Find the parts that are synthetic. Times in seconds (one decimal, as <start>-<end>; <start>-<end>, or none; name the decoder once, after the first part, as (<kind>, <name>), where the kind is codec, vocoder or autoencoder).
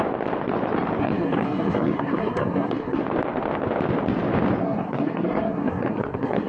1.0-3.0 (codec, SNAC); 4.6-6.5